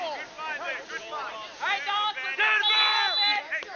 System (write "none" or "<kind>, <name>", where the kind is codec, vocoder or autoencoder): none